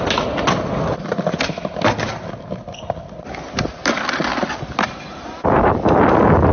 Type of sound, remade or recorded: recorded